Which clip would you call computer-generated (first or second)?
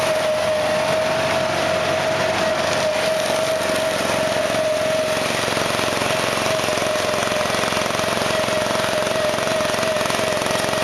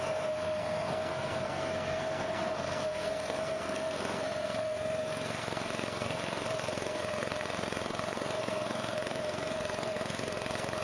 second